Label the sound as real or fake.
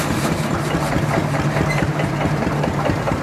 fake